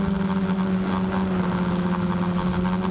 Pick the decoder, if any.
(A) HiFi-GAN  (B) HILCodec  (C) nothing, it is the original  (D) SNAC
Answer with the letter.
C